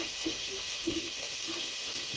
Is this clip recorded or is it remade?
remade